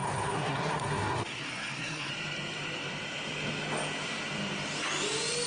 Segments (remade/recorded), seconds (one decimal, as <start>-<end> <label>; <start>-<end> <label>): 0.0-2.1 remade; 2.1-5.5 recorded